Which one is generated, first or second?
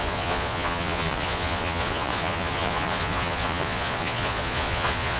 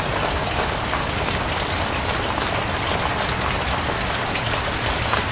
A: first